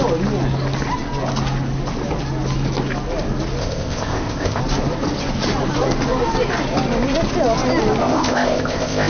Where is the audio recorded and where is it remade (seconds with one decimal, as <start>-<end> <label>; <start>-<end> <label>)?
0.0-3.6 recorded; 3.6-4.6 remade; 4.6-8.0 recorded; 8.0-9.1 remade